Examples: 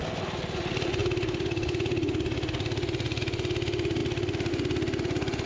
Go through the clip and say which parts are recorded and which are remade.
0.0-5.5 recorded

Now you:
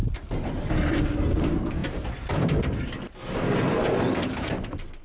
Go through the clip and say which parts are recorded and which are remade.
0.0-0.6 remade; 0.6-5.0 recorded

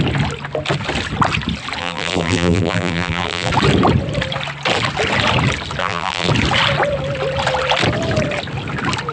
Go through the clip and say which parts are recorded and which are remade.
0.0-1.8 recorded; 1.8-3.5 remade; 3.5-5.8 recorded; 5.8-6.3 remade; 6.3-9.1 recorded

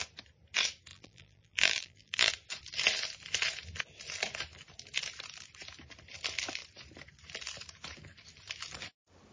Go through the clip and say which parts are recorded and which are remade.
0.0-0.9 recorded; 0.9-2.3 remade; 2.3-9.3 recorded

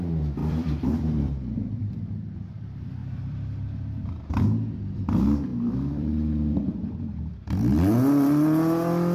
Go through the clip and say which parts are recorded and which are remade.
0.0-0.4 recorded; 0.4-1.8 remade; 1.8-3.0 recorded; 3.0-4.4 remade; 4.4-5.5 recorded; 5.5-7.2 remade; 7.2-9.1 recorded

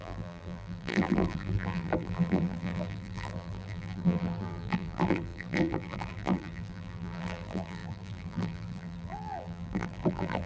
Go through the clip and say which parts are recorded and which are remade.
0.0-10.5 remade